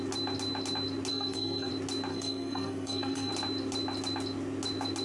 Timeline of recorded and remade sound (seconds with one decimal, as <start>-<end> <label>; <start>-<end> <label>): 0.0-1.1 recorded; 1.1-1.7 remade; 1.7-2.1 recorded; 2.1-3.3 remade; 3.3-5.0 recorded